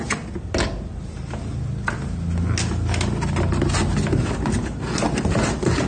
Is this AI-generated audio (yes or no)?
no